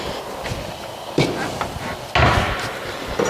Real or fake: real